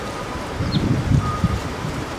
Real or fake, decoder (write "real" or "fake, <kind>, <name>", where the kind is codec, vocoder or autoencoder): fake, vocoder, BigVGAN v2